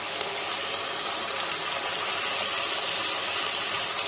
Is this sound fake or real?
real